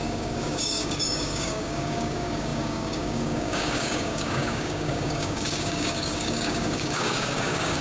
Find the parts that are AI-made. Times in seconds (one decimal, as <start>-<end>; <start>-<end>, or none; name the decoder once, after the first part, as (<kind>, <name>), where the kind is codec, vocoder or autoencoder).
0.0-7.8 (codec, DAC)